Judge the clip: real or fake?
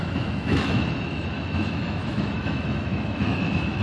fake